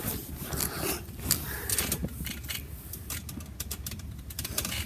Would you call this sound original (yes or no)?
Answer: yes